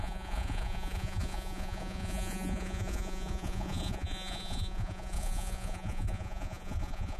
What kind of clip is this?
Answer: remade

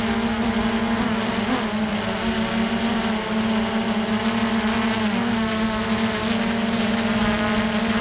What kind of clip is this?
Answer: recorded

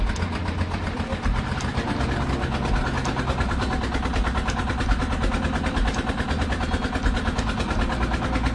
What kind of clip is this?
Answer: recorded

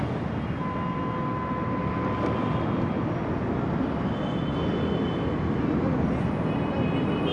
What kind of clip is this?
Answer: recorded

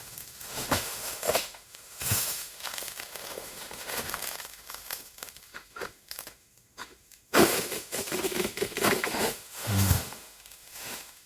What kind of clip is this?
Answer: remade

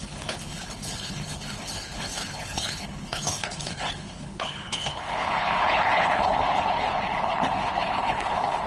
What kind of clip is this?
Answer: remade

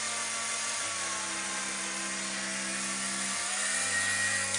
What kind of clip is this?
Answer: recorded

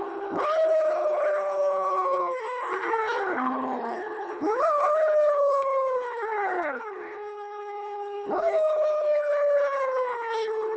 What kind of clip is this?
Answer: remade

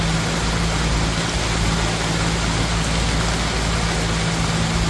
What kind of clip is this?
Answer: recorded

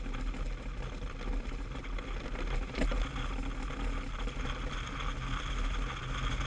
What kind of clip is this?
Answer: recorded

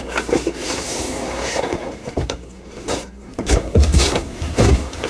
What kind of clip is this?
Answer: remade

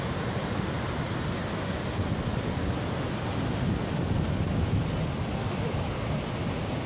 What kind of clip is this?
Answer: recorded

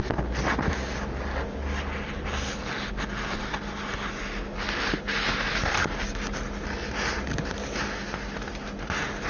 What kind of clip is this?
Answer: recorded